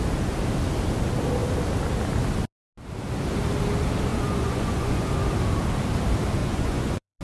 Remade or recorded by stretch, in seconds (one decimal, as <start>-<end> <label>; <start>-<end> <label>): 0.0-4.1 recorded; 4.1-5.1 remade; 5.1-6.4 recorded; 6.4-7.2 remade